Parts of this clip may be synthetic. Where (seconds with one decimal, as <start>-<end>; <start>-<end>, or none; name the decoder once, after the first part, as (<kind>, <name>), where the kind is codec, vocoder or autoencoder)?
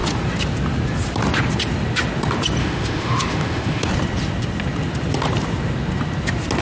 2.6-3.9 (autoencoder, DAC-VAE)